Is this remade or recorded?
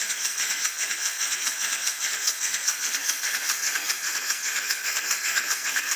remade